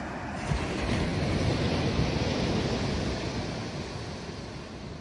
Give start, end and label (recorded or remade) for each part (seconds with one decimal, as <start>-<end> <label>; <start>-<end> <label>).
0.0-5.0 recorded

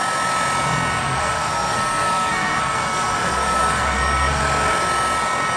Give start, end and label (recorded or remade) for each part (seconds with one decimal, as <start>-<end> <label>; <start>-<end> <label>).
0.0-1.0 recorded; 1.0-4.4 remade; 4.4-5.6 recorded

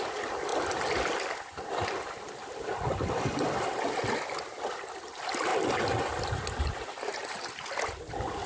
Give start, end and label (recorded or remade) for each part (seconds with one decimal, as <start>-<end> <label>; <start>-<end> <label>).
0.0-8.5 recorded

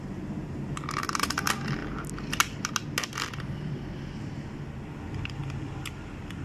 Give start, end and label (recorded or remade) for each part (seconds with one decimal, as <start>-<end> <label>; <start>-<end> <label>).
0.0-6.4 recorded

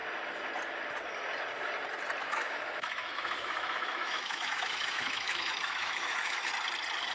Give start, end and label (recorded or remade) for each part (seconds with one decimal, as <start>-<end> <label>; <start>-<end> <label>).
0.0-2.2 recorded; 2.2-6.5 remade; 6.5-7.1 recorded